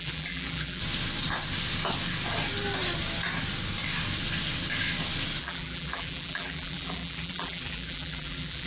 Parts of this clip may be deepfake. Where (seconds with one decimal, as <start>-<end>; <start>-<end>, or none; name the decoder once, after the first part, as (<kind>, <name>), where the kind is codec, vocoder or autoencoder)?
0.0-0.8 (vocoder, BigVGAN v2); 5.4-8.7